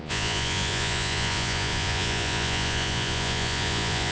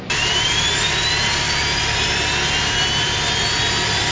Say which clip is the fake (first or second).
first